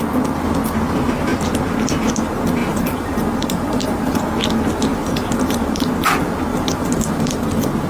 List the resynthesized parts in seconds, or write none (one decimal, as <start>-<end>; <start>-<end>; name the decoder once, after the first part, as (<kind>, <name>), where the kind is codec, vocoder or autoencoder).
2.6-4.2 (vocoder, BigVGAN v2); 4.9-5.9; 6.5-7.3